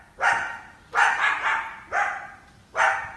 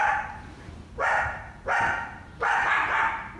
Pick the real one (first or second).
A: first